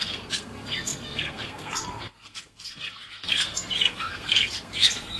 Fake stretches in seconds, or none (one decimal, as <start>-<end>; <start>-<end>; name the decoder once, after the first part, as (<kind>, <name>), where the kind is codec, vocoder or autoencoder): 0.0-5.2 (codec, SNAC)